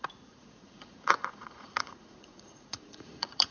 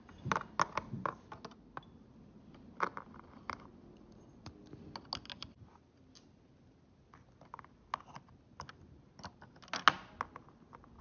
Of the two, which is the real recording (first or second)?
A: second